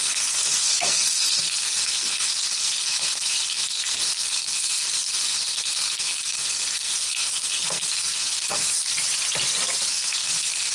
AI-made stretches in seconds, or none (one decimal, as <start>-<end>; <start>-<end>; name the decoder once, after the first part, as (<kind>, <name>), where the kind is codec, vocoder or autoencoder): 0.0-8.9 (codec, SNAC); 9.9-10.7